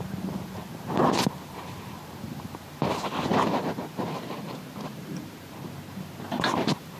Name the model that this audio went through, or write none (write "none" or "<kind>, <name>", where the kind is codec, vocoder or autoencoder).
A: vocoder, BigVGAN v2